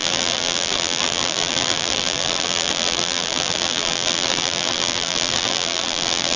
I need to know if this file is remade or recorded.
remade